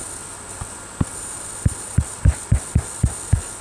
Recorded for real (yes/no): yes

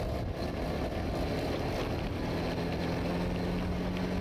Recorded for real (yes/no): yes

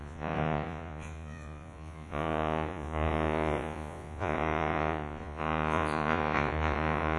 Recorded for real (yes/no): no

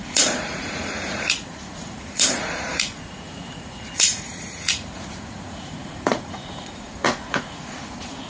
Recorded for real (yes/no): no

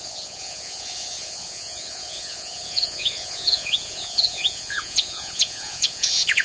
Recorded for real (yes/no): no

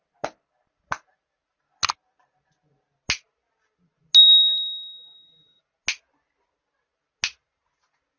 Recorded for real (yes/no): yes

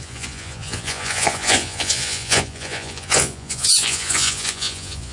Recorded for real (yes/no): no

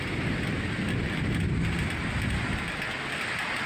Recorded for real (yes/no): yes